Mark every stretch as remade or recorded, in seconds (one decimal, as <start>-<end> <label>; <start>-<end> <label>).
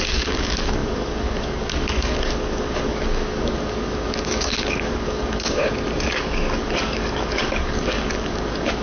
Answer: 0.0-5.6 remade; 5.6-6.1 recorded; 6.1-8.8 remade